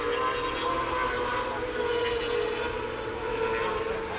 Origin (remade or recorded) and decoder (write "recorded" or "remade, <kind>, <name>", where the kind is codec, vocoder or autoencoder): recorded